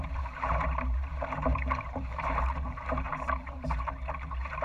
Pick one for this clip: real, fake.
fake